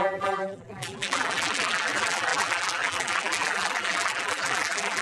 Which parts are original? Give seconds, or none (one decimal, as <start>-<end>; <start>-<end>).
none